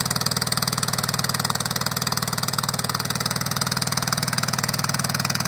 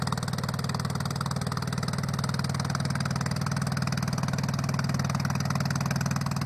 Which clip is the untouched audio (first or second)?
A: second